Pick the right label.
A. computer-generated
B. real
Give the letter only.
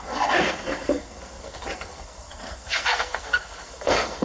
A